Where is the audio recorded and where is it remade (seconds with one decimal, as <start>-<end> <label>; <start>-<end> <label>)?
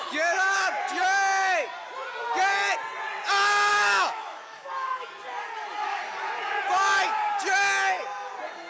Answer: 0.0-3.7 recorded; 3.7-4.7 remade; 4.7-8.7 recorded